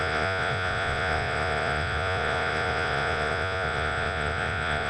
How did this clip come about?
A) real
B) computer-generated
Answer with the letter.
B